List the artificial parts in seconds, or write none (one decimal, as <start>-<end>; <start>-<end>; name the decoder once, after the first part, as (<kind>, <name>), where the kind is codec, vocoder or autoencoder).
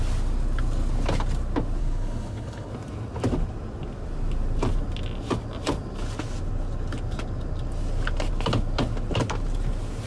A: 1.8-2.7 (codec, HILCodec)